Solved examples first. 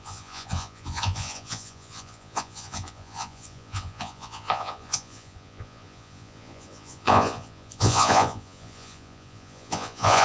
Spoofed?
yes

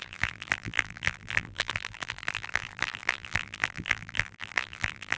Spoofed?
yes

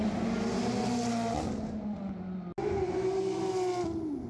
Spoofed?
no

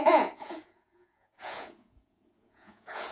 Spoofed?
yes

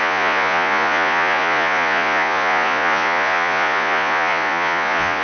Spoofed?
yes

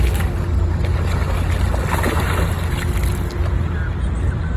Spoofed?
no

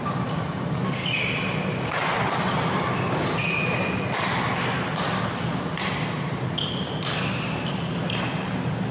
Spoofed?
no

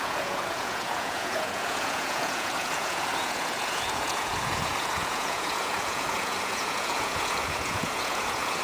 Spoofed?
yes